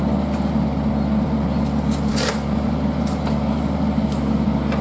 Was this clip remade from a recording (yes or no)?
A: no